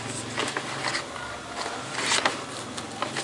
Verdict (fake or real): real